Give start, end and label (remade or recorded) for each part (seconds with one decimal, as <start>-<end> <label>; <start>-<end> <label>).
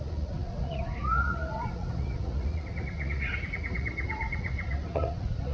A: 0.0-5.5 remade